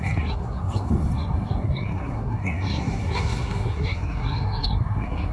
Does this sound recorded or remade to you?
remade